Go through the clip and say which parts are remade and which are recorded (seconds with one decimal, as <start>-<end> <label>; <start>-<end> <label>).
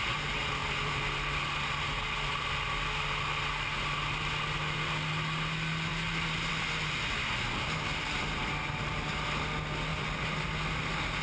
0.0-11.2 recorded